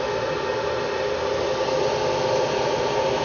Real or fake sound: real